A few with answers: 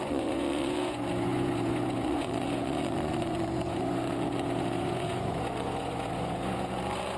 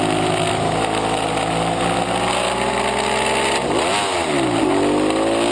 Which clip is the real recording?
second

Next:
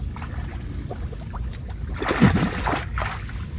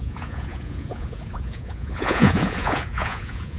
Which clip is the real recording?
first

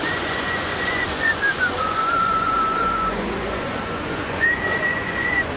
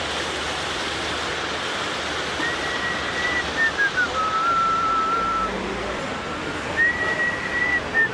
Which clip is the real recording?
second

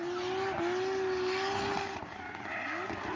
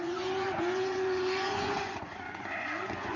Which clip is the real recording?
first